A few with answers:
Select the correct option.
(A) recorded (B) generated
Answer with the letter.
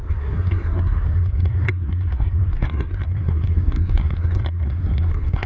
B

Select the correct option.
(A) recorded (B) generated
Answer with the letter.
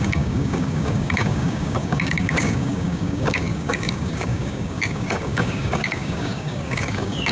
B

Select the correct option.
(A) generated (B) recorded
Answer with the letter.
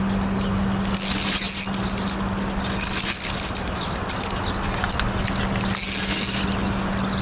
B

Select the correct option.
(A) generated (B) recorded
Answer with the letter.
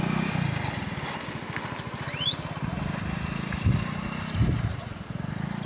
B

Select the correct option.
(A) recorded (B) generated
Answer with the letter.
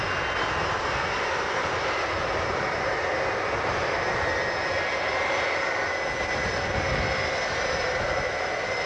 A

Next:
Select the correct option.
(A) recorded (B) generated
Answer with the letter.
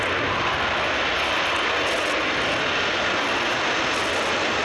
A